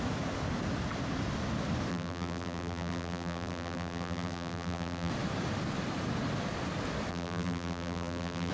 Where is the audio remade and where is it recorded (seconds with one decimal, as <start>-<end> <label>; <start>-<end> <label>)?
0.0-1.9 recorded; 1.9-5.1 remade; 5.1-7.1 recorded; 7.1-8.5 remade